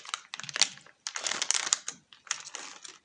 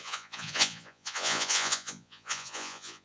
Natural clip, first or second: first